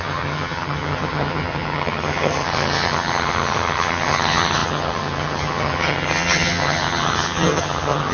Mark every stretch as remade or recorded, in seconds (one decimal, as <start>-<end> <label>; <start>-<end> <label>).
0.0-8.1 remade